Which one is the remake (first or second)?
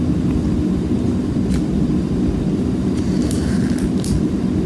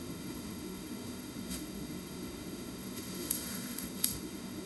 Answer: second